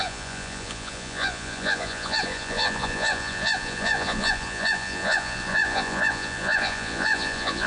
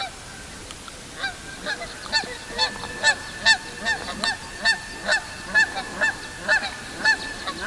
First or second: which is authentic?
second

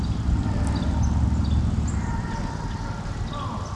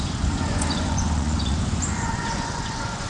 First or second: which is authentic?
first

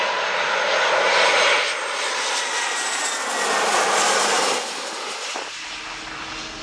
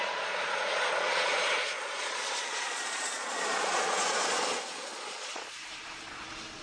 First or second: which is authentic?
first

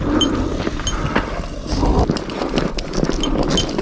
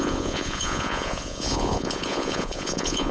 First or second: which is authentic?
first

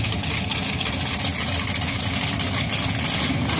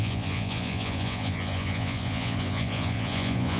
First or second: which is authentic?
first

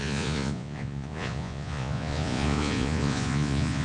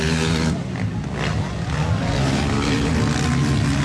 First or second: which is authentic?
second